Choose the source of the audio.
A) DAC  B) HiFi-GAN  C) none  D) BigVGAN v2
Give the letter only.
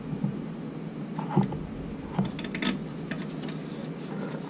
C